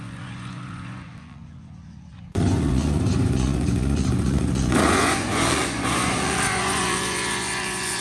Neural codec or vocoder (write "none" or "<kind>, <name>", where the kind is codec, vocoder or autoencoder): vocoder, Vocos